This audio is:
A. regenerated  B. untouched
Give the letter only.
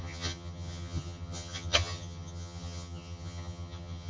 A